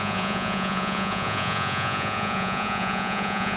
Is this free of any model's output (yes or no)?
no